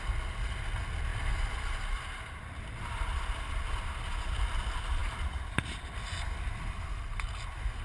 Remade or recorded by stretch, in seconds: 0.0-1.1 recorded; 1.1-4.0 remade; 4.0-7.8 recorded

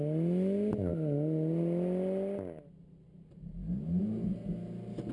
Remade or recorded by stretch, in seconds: 0.0-5.1 recorded

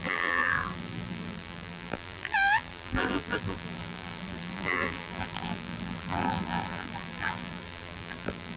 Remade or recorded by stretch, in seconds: 0.0-8.6 remade

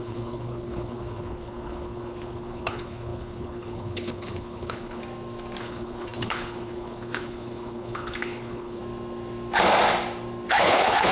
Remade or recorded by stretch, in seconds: 0.0-5.0 remade; 5.0-5.6 recorded; 5.6-8.8 remade; 8.8-10.5 recorded; 10.5-11.1 remade

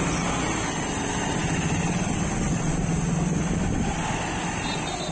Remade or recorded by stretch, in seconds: 0.0-5.1 recorded

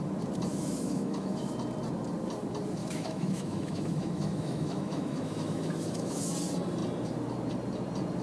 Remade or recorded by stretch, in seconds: 0.0-0.5 recorded; 0.5-1.5 remade; 1.5-2.8 recorded; 2.8-6.3 remade; 6.3-8.2 recorded

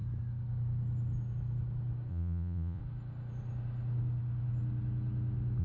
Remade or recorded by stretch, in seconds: 0.0-2.1 recorded; 2.1-2.8 remade; 2.8-5.6 recorded